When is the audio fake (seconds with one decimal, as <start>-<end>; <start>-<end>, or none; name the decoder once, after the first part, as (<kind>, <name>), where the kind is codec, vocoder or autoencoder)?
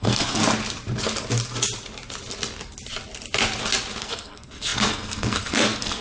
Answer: 0.0-0.4 (codec, SNAC); 4.0-6.0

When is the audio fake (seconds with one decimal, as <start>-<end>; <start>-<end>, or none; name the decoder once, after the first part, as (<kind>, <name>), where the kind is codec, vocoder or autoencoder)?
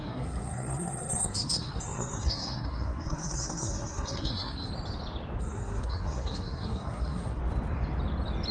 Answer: 0.0-4.7 (codec, SNAC); 5.4-7.4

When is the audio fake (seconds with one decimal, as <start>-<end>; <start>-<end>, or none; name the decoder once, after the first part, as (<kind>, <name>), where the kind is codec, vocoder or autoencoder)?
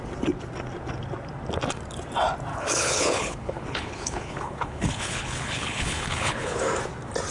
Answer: 2.5-6.6 (codec, HILCodec)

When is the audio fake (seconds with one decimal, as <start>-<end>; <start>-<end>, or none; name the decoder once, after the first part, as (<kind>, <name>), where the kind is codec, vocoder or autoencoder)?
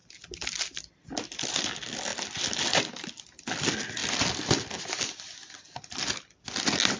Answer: none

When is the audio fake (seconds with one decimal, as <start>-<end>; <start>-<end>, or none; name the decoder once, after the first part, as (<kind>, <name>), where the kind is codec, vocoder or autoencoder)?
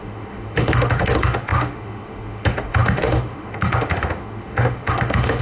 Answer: 0.0-5.4 (autoencoder, DAC-VAE)